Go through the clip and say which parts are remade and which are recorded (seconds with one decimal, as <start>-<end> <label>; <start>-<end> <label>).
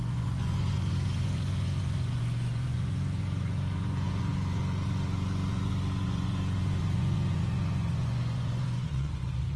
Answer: 0.0-9.6 remade